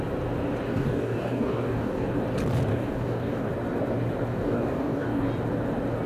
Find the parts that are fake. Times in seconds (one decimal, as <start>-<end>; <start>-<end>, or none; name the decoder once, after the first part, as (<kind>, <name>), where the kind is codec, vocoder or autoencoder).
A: 0.7-2.1 (codec, DAC); 2.7-3.5; 4.3-5.3